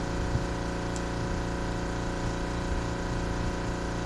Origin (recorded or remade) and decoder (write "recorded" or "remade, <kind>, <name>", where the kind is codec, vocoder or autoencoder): recorded